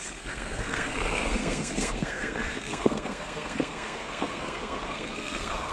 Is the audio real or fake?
fake